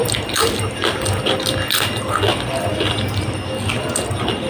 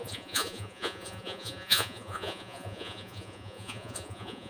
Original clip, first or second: first